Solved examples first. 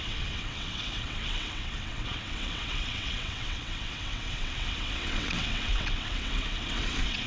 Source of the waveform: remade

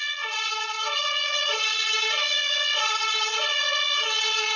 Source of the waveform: remade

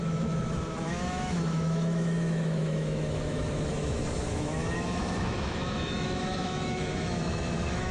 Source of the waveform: remade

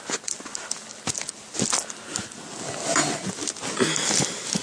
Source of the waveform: recorded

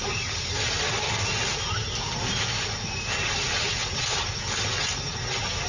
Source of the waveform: recorded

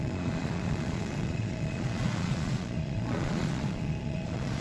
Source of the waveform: remade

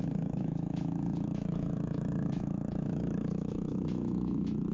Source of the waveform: remade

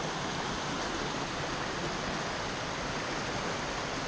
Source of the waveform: recorded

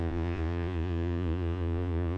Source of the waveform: remade